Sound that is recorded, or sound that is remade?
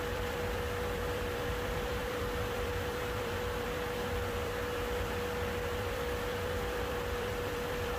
remade